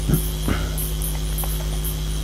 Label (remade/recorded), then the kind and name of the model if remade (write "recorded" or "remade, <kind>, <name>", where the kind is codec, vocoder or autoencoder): recorded